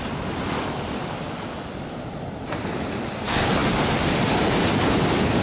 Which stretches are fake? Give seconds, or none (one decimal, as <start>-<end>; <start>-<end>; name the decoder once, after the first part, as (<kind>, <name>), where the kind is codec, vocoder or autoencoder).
none